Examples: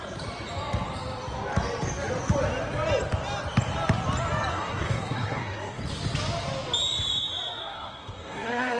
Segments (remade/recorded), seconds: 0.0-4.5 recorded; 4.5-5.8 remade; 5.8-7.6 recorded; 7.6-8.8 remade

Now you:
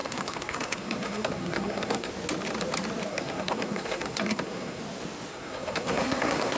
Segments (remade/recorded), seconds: 0.0-2.1 remade; 2.1-3.1 recorded; 3.1-4.8 remade; 4.8-5.3 recorded; 5.3-6.6 remade

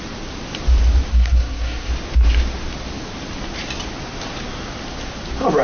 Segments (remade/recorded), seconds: 0.0-1.1 recorded; 1.1-1.9 remade; 1.9-5.6 recorded

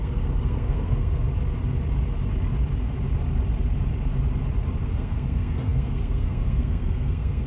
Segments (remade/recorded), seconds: 0.0-1.3 remade; 1.3-4.8 recorded; 4.8-7.5 remade

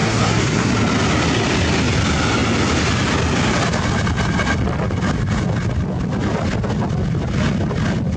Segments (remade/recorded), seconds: 0.0-0.7 remade; 0.7-8.2 recorded

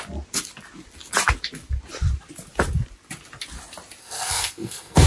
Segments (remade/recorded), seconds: 0.0-4.0 recorded; 4.0-5.1 remade

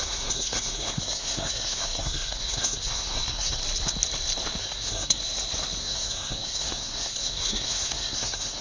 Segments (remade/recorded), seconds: 0.0-3.6 remade; 3.6-4.6 recorded; 4.6-5.2 remade; 5.2-5.8 recorded; 5.8-8.6 remade